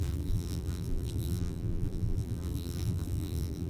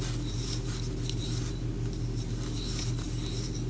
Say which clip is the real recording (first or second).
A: second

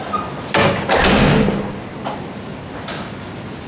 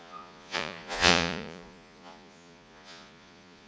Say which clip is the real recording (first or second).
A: first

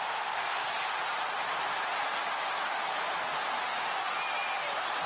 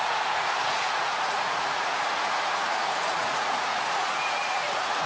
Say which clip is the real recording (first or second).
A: first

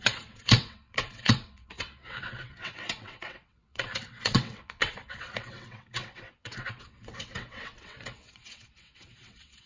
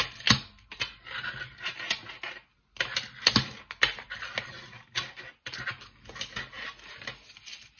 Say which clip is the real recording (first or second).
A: second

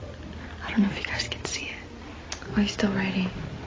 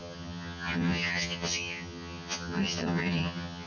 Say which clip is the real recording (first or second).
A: first